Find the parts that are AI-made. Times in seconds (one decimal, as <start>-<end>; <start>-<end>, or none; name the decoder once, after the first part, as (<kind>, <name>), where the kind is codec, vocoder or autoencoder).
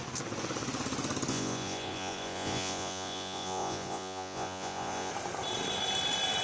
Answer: 1.3-5.1 (vocoder, Vocos)